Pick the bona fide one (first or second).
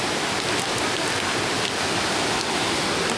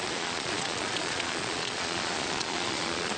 first